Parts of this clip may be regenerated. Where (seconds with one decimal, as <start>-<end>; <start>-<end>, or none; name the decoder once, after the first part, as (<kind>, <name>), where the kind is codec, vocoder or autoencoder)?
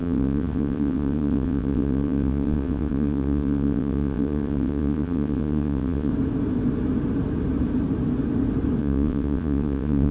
0.0-6.1 (vocoder, WaveNeXt); 8.8-10.1